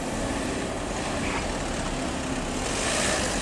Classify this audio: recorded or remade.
recorded